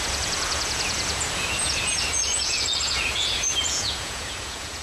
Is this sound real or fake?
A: fake